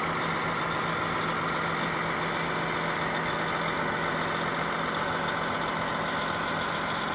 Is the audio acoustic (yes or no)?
yes